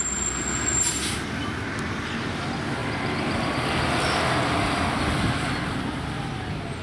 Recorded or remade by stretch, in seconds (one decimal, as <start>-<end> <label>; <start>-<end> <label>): 0.0-0.7 recorded; 0.7-1.6 remade; 1.6-6.8 recorded